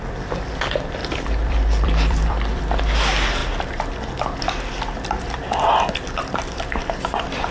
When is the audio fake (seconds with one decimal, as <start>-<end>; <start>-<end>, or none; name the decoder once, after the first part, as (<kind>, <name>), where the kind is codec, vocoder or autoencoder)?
1.0-2.6 (vocoder, BigVGAN v2)